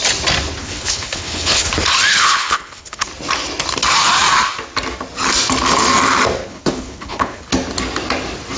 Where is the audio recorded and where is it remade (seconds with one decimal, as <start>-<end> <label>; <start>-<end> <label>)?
0.0-0.6 recorded; 0.6-1.7 remade; 1.7-2.1 recorded; 2.1-3.1 remade; 3.1-6.4 recorded; 6.4-7.5 remade; 7.5-8.6 recorded